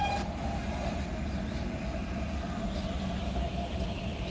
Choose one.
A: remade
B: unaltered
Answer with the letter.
B